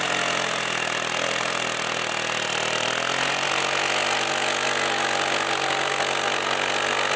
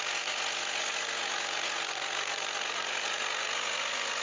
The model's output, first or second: second